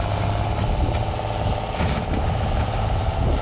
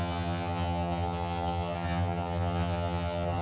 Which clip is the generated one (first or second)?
second